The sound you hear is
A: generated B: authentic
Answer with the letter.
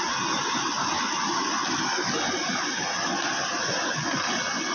B